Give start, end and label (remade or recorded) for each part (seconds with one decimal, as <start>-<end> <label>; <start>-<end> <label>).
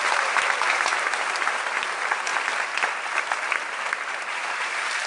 0.0-2.3 remade; 2.3-4.1 recorded; 4.1-5.1 remade